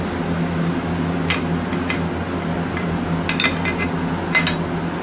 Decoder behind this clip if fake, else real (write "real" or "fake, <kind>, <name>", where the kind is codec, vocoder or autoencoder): real